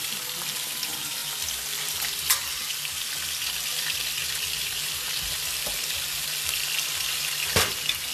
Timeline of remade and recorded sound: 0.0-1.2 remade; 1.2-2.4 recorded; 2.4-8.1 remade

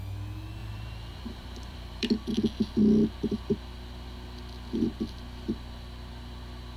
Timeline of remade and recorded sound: 0.0-0.6 recorded; 0.6-2.1 remade; 2.1-6.8 recorded

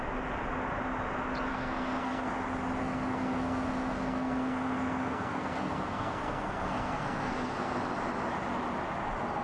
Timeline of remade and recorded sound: 0.0-1.5 recorded; 1.5-2.3 remade; 2.3-2.8 recorded; 2.8-7.8 remade; 7.8-9.4 recorded

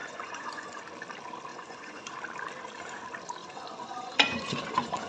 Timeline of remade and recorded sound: 0.0-0.8 remade; 0.8-1.5 recorded; 1.5-2.1 remade; 2.1-3.4 recorded; 3.4-5.1 remade

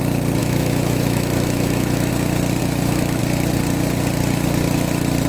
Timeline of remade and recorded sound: 0.0-0.4 recorded; 0.4-2.1 remade; 2.1-2.6 recorded; 2.6-3.2 remade; 3.2-5.3 recorded

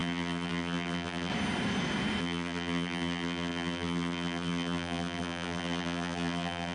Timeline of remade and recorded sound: 0.0-1.3 remade; 1.3-2.2 recorded; 2.2-6.7 remade